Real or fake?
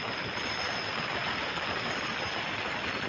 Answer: real